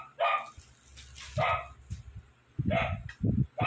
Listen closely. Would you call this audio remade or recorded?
recorded